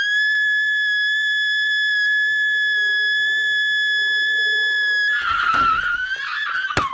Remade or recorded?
recorded